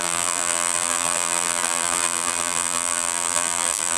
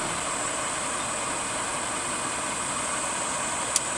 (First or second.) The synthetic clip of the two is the first